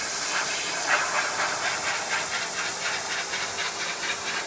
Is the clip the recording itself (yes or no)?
yes